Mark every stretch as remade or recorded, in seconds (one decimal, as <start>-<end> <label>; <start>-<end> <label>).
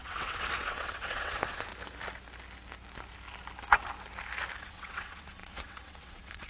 0.0-1.7 remade; 1.7-4.6 recorded; 4.6-6.5 remade